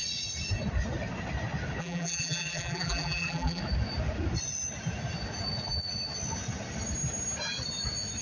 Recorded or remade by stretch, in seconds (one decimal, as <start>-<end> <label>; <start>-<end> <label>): 0.0-1.8 recorded; 1.8-3.6 remade; 3.6-8.2 recorded